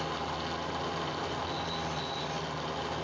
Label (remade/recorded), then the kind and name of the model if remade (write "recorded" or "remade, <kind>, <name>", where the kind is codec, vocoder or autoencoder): recorded